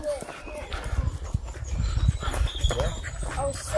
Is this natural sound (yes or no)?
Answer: yes